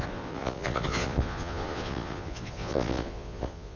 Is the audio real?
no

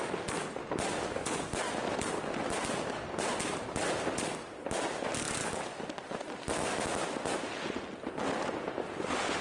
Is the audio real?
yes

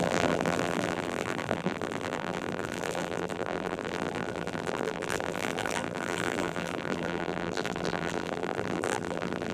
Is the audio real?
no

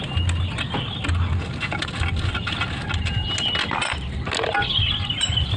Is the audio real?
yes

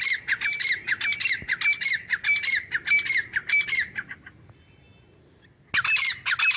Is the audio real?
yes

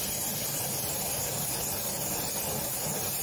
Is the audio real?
yes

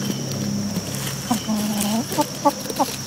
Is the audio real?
yes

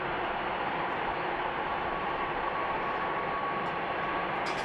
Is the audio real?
yes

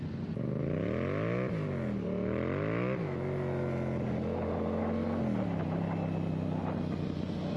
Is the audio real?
yes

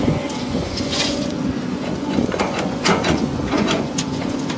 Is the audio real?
no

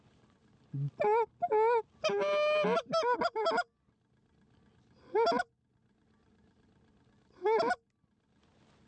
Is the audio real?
yes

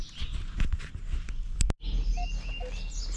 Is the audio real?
yes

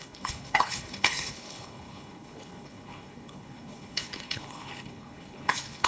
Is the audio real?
no